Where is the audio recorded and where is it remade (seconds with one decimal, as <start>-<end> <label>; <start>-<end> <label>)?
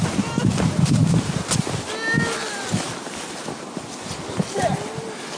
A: 0.0-5.4 recorded